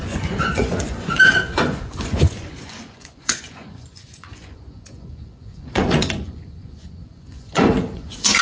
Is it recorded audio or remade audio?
remade